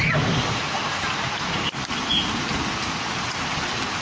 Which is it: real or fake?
real